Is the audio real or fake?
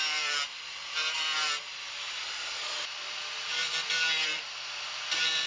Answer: fake